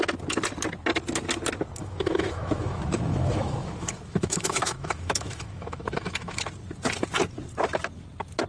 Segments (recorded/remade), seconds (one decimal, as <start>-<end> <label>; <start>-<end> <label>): 0.0-1.8 recorded; 1.8-6.5 remade; 6.5-8.5 recorded